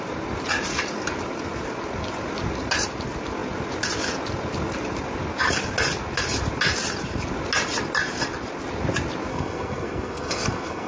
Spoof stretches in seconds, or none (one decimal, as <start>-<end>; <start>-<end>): 9.3-10.9